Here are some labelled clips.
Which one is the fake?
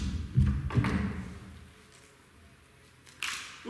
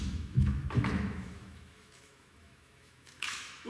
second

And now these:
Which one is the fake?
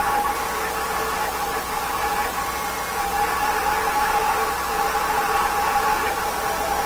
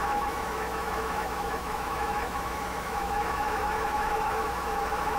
second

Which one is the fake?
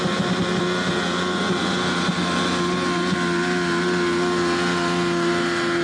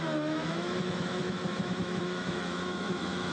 second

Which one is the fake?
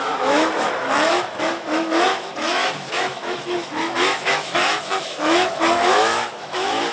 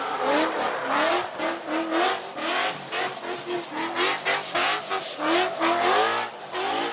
first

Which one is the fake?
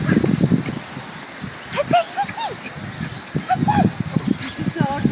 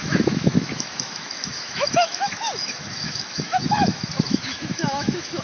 second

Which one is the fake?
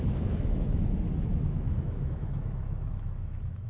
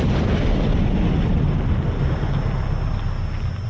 first